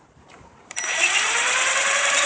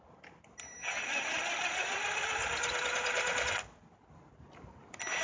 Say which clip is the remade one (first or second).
first